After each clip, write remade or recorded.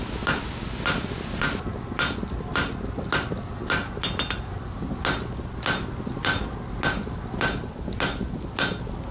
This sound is recorded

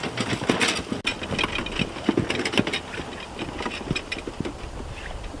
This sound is recorded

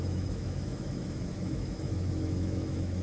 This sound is remade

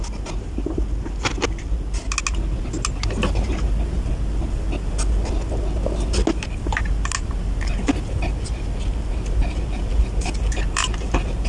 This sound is recorded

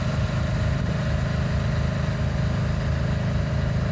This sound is recorded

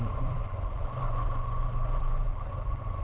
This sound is remade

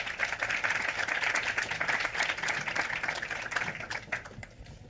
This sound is recorded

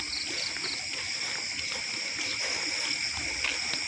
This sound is recorded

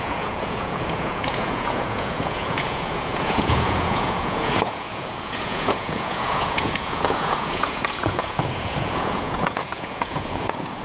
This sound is remade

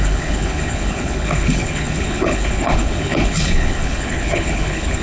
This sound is remade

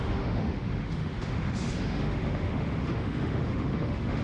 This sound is remade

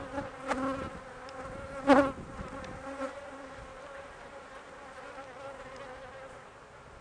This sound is recorded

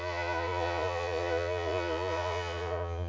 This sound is remade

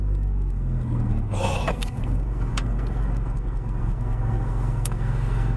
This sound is remade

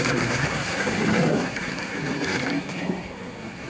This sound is remade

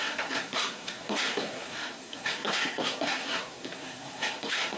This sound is remade